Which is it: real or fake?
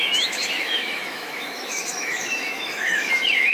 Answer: fake